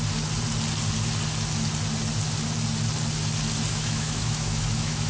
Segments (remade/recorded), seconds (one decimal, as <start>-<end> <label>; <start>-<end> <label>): 0.0-3.7 recorded; 3.7-5.1 remade